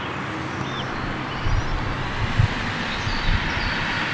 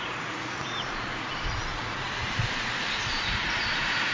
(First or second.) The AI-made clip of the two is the second